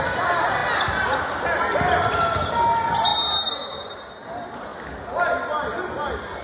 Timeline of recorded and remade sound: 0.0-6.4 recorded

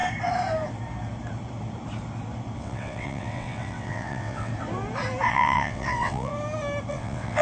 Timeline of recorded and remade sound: 0.0-2.6 recorded; 2.6-4.5 remade; 4.5-5.3 recorded; 5.3-6.3 remade; 6.3-6.9 recorded; 6.9-7.4 remade

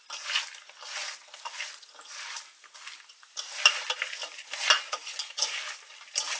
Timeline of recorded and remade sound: 0.0-6.4 recorded

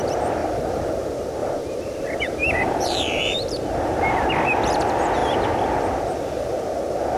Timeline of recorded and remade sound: 0.0-0.4 recorded; 0.4-0.9 remade; 0.9-1.4 recorded; 1.4-4.3 remade; 4.3-7.2 recorded